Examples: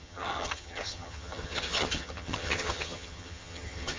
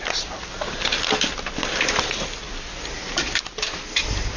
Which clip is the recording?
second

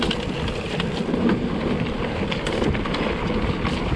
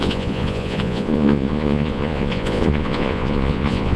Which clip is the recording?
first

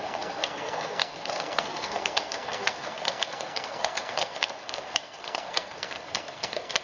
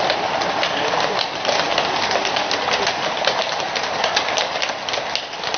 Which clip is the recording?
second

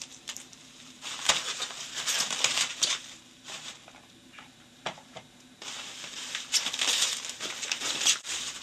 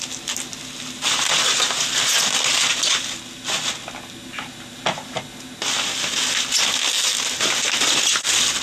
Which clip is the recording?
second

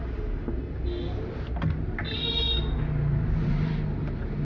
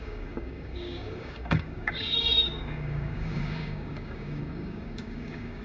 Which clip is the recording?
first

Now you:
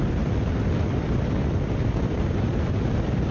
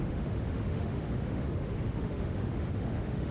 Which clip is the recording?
first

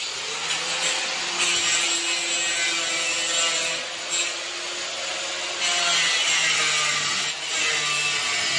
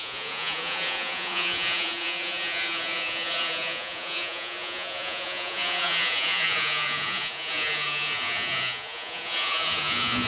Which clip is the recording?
first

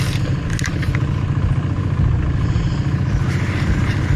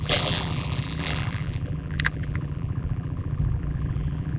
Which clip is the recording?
first